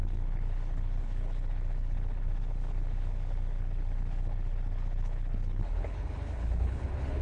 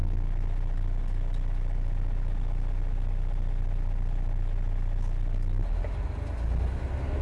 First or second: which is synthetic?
first